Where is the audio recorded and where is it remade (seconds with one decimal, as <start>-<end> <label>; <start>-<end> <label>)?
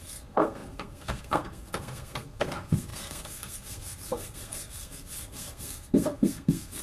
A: 0.0-6.8 remade